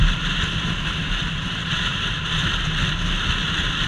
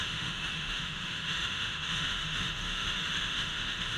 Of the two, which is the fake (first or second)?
second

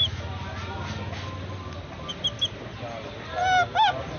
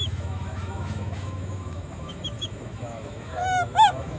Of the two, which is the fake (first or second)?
second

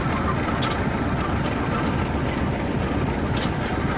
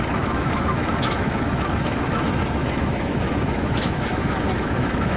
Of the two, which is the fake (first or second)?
second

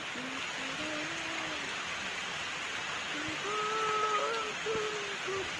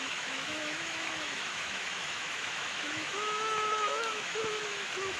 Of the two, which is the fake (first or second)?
second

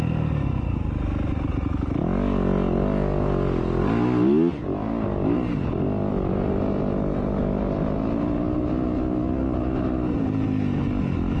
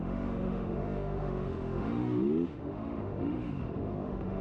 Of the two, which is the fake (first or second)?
second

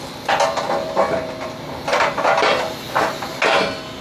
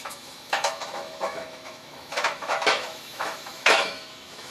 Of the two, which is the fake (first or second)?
second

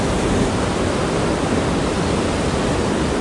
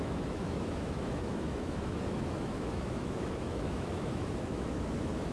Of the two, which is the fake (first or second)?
second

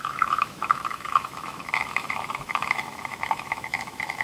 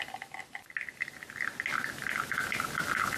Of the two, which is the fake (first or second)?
first